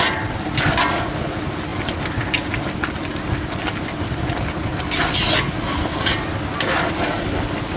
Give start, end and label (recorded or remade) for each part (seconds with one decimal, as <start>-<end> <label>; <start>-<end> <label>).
0.0-7.8 recorded